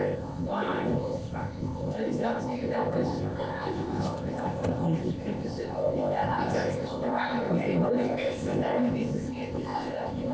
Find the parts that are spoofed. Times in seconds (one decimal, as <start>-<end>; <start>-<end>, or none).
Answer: 0.0-10.3